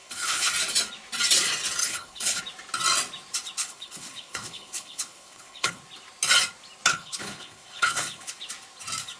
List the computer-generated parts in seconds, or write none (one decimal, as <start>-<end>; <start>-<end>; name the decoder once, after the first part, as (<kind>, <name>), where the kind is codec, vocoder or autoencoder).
0.0-0.5 (codec, HILCodec); 1.8-2.4; 3.6-5.8; 6.9-8.4